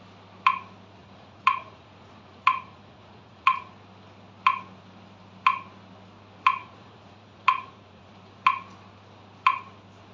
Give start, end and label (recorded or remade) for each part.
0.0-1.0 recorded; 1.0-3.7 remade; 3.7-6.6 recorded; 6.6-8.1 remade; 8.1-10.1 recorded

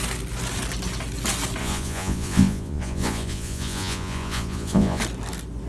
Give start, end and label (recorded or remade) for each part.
0.0-1.6 recorded; 1.6-5.0 remade; 5.0-5.7 recorded

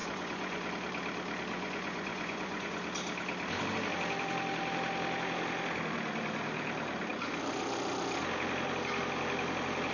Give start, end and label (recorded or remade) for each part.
0.0-0.7 remade; 0.7-1.5 recorded; 1.5-2.8 remade; 2.8-9.9 recorded